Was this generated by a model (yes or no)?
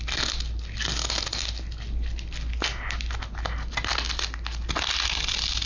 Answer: no